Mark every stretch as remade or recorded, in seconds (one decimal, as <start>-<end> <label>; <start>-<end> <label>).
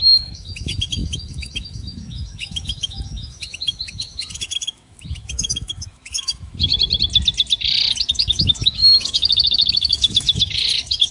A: 0.0-6.7 remade; 6.7-8.1 recorded; 8.1-11.1 remade